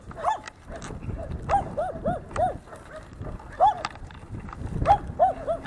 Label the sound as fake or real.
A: real